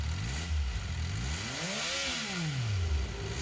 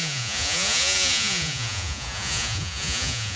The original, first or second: first